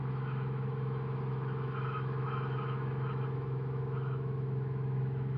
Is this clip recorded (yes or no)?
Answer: no